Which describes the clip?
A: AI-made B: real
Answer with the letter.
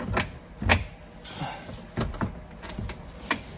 B